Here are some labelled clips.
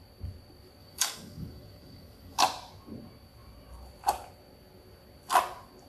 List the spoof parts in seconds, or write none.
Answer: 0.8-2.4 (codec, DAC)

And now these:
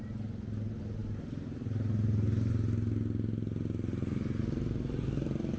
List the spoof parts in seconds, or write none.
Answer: none

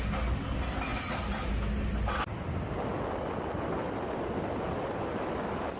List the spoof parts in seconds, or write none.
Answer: none

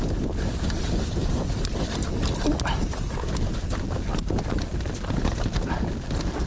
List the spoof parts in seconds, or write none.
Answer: 1.2-3.5 (vocoder, BigVGAN v2); 4.1-6.1

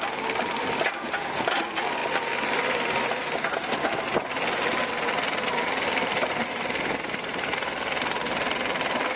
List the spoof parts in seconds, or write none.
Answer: none